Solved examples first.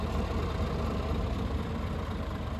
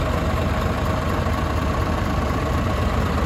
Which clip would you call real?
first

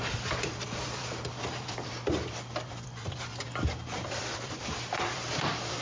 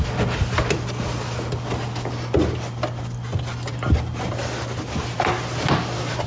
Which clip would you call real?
second